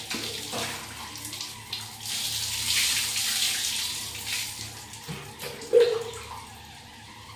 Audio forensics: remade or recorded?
recorded